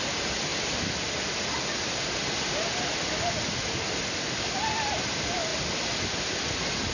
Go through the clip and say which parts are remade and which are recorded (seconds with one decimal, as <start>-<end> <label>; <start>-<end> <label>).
0.0-0.5 remade; 0.5-3.2 recorded; 3.2-3.6 remade; 3.6-4.1 recorded; 4.1-6.9 remade